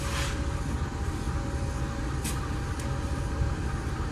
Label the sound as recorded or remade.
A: recorded